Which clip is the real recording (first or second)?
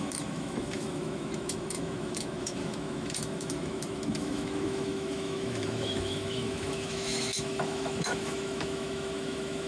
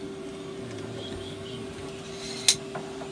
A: second